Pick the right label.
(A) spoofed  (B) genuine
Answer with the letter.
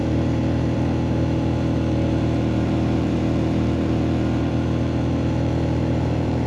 A